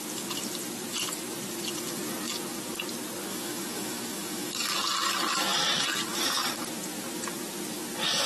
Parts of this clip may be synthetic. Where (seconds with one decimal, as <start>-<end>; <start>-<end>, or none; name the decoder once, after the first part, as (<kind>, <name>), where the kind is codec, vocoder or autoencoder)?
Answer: 3.3-4.6 (autoencoder, DAC-VAE)